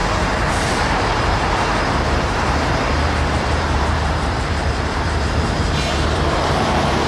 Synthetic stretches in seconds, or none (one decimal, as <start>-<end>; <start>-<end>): 0.5-7.1